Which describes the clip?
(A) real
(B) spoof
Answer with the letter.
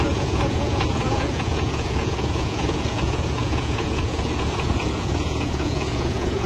B